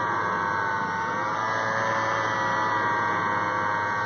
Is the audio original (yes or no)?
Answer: yes